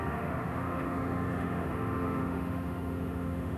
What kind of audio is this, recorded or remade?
remade